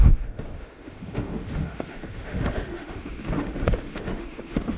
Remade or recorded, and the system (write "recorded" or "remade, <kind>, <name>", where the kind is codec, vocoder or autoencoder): remade, autoencoder, DAC-VAE